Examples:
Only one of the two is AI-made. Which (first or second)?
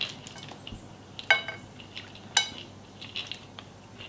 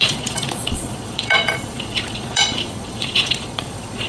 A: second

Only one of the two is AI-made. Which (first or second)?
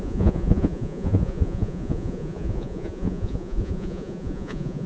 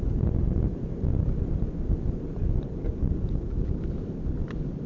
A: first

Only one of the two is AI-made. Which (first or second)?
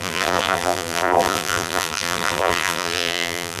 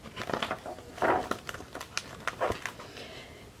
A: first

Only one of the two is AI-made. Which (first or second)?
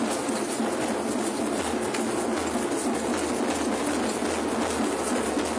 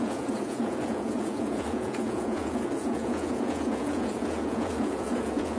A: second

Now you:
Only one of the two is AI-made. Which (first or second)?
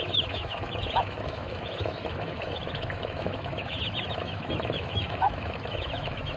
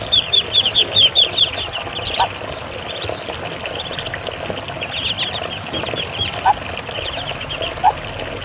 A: first